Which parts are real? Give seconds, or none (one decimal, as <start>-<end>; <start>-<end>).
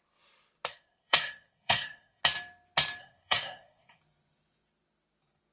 0.0-0.7; 2.2-3.0; 4.0-5.5